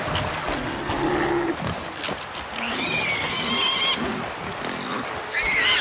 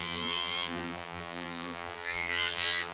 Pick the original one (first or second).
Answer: first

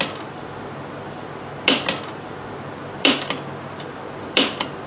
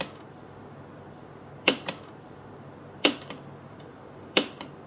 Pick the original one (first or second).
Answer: first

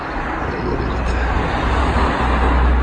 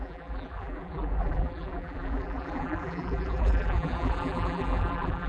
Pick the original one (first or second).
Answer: first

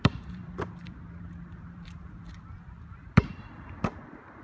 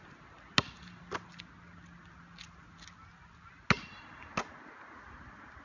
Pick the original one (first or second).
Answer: second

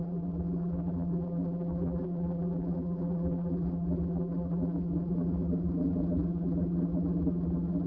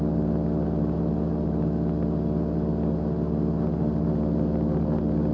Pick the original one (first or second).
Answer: second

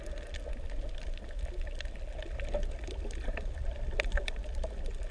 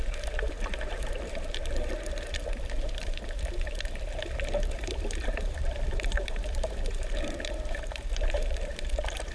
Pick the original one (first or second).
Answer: first